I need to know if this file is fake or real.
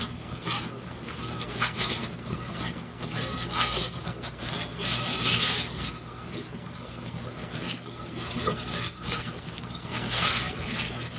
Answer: fake